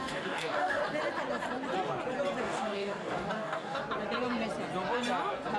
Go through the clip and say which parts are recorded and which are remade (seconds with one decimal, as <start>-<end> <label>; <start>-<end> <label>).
0.0-0.8 remade; 0.8-2.4 recorded; 2.4-3.8 remade; 3.8-5.6 recorded